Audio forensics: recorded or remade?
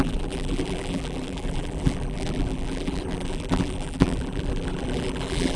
remade